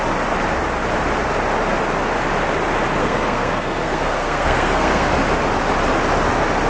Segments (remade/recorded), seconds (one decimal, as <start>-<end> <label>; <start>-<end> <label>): 0.0-3.0 recorded; 3.0-5.1 remade; 5.1-6.7 recorded